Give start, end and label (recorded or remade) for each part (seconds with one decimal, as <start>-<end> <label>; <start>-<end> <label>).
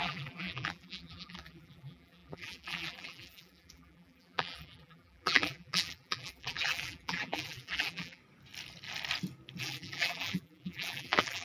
0.0-8.2 remade; 8.2-9.6 recorded; 9.6-11.4 remade